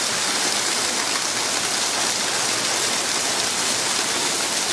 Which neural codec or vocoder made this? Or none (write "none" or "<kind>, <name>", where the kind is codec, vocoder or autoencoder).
none